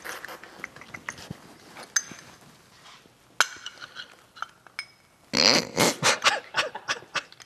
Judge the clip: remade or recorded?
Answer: recorded